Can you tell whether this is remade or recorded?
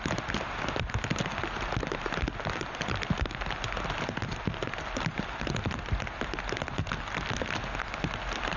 recorded